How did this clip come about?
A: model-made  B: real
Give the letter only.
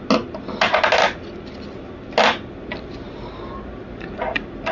B